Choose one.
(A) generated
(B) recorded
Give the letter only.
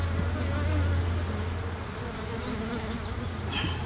B